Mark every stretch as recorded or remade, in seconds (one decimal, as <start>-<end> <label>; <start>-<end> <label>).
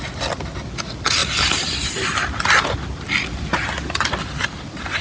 0.0-5.0 recorded